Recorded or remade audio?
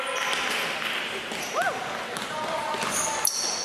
recorded